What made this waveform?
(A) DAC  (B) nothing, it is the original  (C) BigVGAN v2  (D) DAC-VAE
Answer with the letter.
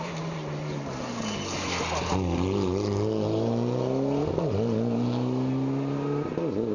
B